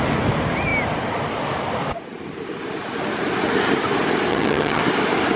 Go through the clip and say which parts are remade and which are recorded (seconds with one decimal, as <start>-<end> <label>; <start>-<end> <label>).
0.0-4.3 recorded; 4.3-4.8 remade; 4.8-5.4 recorded